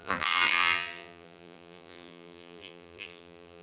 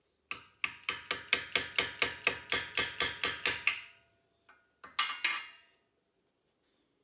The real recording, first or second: second